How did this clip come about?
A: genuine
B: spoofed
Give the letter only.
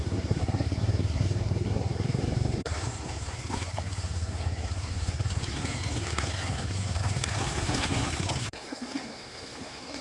B